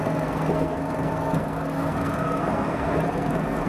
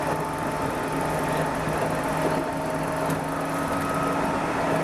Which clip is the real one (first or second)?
second